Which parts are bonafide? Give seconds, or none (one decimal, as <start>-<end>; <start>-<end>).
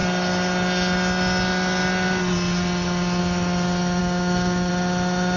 0.0-4.0; 4.7-5.4